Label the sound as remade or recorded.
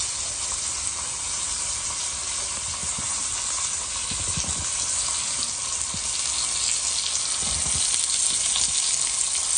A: recorded